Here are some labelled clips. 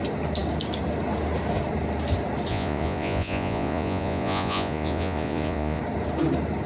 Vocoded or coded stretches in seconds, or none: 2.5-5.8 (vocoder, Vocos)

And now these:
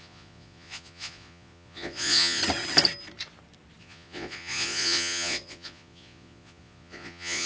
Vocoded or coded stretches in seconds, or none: 0.0-2.4 (vocoder, Vocos); 3.8-7.5

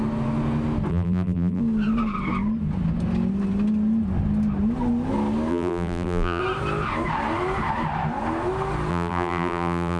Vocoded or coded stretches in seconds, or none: 0.9-1.6 (vocoder, BigVGAN v2); 5.5-6.4; 8.9-10.0

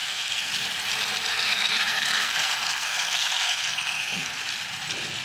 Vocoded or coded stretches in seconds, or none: 0.0-0.5 (codec, SNAC); 1.3-4.4

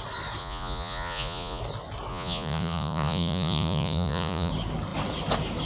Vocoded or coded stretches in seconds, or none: 0.4-1.6 (vocoder, Vocos); 2.1-4.5

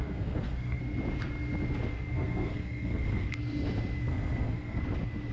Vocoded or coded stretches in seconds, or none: 0.0-0.8 (codec, SNAC); 1.9-3.4; 4.1-4.8

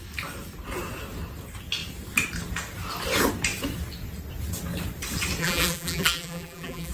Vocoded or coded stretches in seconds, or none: 5.4-6.9 (vocoder, BigVGAN v2)

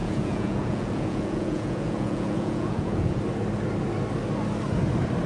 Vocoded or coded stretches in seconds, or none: 0.0-3.2 (vocoder, Vocos)